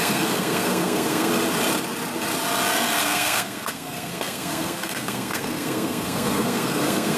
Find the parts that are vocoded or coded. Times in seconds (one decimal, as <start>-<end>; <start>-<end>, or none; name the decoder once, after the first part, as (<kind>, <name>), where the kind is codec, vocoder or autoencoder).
0.0-1.3 (codec, SNAC); 3.0-7.2